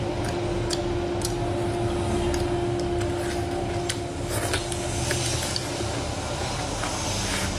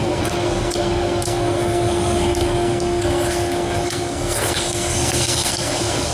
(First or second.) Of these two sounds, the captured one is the first